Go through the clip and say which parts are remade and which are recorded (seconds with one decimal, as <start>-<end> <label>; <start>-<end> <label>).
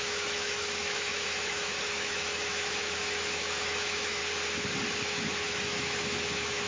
0.0-4.2 remade; 4.2-5.0 recorded; 5.0-6.7 remade